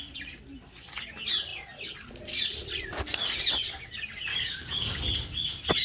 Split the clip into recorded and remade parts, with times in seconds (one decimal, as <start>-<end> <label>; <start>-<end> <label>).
0.0-4.3 recorded; 4.3-5.0 remade; 5.0-5.8 recorded